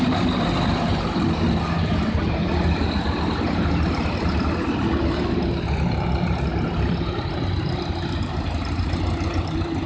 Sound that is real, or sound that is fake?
fake